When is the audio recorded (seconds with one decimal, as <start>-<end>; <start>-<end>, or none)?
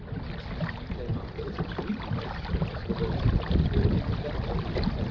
0.0-1.1; 4.2-5.1